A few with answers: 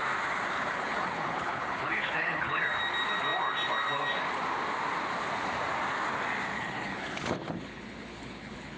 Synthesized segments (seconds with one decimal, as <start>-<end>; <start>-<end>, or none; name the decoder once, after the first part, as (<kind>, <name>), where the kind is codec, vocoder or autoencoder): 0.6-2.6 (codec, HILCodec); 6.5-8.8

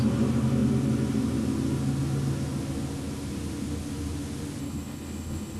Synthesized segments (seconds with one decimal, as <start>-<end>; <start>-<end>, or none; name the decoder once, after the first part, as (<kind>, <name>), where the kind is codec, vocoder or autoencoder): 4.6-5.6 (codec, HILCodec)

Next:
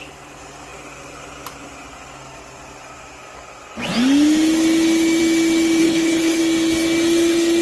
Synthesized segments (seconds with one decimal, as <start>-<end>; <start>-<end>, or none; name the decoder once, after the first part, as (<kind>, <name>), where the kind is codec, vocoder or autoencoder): 5.8-6.4 (codec, HILCodec)

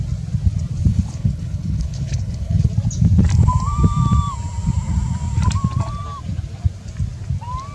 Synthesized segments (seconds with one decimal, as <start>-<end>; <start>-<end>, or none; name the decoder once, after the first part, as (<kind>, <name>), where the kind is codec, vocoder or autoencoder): 0.9-2.7 (codec, HILCodec)